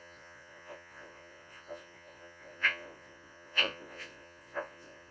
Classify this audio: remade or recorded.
remade